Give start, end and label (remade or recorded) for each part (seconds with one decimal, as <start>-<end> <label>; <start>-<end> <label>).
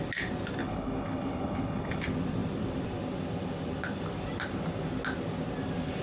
0.0-0.6 recorded; 0.6-2.0 remade; 2.0-6.0 recorded